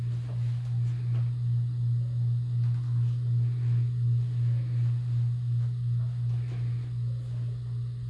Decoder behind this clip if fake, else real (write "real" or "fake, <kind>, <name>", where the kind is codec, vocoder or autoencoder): real